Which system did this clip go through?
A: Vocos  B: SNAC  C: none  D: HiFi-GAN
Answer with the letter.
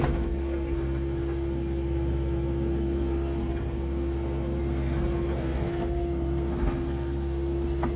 B